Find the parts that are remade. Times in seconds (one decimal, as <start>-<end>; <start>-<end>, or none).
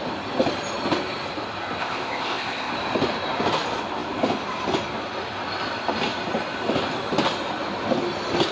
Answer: 1.8-2.7